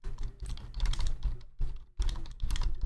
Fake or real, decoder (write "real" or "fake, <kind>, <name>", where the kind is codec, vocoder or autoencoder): real